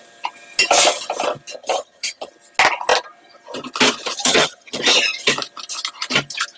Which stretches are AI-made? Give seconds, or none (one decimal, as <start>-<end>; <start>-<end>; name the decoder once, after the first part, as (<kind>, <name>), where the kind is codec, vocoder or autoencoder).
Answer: 1.6-2.3 (vocoder, HiFi-GAN); 4.2-4.8